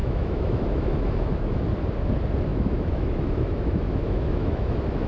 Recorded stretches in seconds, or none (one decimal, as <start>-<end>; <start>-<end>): 1.6-2.5